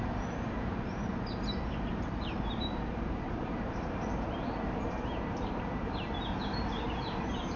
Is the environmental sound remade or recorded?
remade